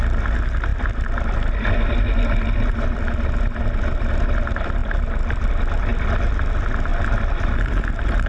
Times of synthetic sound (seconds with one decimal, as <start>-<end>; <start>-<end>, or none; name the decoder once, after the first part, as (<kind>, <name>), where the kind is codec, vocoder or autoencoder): 0.7-3.0 (vocoder, BigVGAN v2); 4.8-5.5; 6.9-7.8